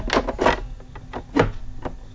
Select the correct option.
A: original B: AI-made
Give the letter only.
A